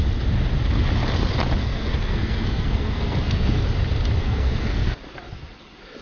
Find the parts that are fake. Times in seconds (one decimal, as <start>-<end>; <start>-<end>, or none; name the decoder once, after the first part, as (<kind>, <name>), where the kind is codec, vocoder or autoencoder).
1.6-3.6 (codec, SNAC); 4.2-5.0

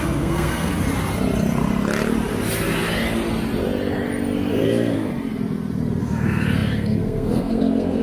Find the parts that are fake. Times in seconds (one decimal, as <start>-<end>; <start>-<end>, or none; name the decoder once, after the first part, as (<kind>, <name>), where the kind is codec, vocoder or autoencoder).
0.0-0.7 (codec, SNAC); 4.5-5.1; 6.0-8.0

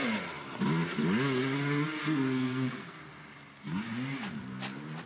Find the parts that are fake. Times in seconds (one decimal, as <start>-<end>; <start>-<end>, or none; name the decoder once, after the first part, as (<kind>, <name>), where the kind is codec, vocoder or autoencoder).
2.0-3.0 (codec, SNAC)

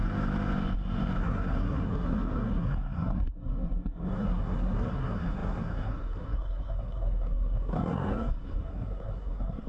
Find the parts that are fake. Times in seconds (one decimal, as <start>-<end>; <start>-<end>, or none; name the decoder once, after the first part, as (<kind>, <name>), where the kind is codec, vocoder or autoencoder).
1.2-9.7 (codec, SNAC)

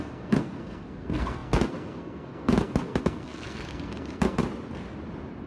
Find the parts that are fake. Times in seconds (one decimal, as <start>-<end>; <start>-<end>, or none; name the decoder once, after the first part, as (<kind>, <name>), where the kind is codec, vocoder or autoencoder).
0.0-4.4 (codec, SNAC)

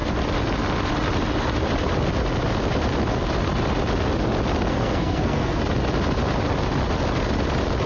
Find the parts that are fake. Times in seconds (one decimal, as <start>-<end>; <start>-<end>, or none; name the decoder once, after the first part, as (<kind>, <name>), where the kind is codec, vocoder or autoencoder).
4.7-5.6 (codec, SNAC)

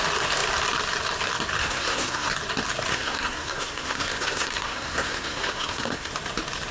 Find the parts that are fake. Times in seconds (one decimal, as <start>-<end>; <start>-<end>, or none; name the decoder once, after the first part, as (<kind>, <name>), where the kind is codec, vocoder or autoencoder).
1.6-2.3 (codec, SNAC); 2.9-6.1

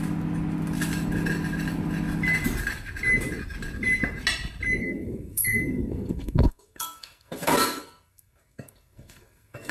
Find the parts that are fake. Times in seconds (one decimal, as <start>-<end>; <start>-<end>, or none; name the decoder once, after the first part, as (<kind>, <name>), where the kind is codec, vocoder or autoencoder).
4.8-9.7 (codec, SNAC)